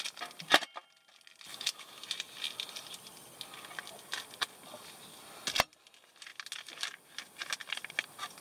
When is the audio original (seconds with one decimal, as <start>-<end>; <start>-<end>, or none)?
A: 0.0-1.5; 2.0-8.4